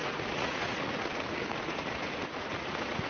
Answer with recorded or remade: remade